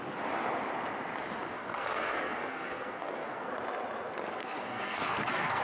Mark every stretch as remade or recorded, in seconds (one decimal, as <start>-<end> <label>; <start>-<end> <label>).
0.0-1.5 recorded; 1.5-3.5 remade; 3.5-4.4 recorded; 4.4-5.6 remade